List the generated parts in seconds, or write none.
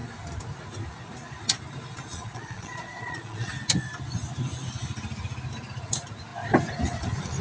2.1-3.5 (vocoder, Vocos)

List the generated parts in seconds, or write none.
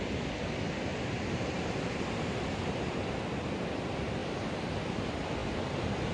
0.9-3.1 (vocoder, BigVGAN v2); 4.2-5.0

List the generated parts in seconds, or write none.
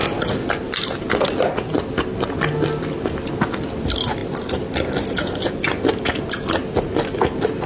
none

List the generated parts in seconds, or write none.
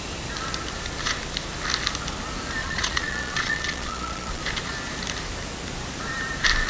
2.6-4.4 (vocoder, Vocos)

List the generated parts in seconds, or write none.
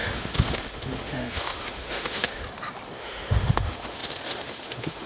0.0-2.4 (autoencoder, DAC-VAE); 3.0-5.1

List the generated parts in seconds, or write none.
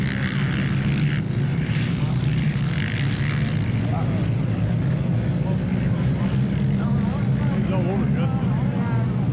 1.5-2.6 (vocoder, BigVGAN v2); 5.7-6.2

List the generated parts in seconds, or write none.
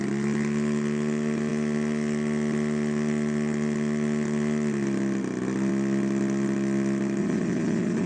7.2-8.1 (vocoder, Vocos)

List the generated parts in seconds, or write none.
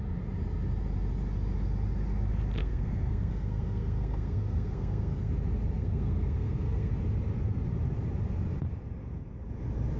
2.6-5.3 (codec, SNAC); 5.8-6.9